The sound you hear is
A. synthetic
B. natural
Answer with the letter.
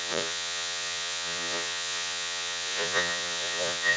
A